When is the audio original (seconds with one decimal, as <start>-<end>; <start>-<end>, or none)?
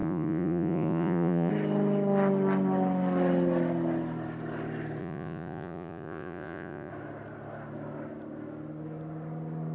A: 1.5-5.0; 6.9-9.7